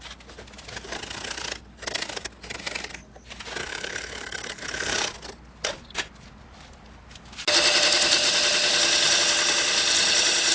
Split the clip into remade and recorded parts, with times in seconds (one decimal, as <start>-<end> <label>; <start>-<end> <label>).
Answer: 0.0-3.6 recorded; 3.6-5.1 remade; 5.1-10.5 recorded